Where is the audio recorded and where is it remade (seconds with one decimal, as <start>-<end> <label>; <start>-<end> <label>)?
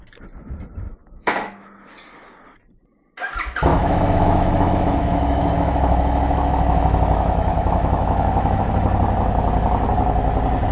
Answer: 0.0-1.0 recorded; 1.0-1.9 remade; 1.9-3.7 recorded; 3.7-8.6 remade; 8.6-10.7 recorded